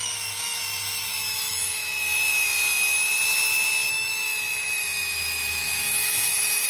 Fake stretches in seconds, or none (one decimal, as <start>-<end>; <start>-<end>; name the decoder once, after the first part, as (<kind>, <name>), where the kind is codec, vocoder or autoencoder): 0.0-1.9 (autoencoder, DAC-VAE); 3.9-6.7